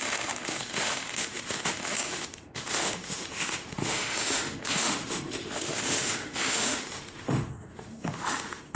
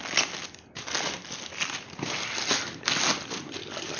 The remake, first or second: first